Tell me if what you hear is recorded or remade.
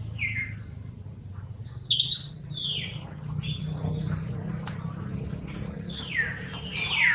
recorded